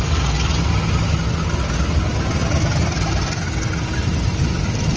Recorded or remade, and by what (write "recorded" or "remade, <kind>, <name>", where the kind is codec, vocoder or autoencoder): recorded